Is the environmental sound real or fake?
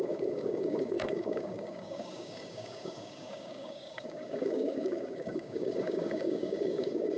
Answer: fake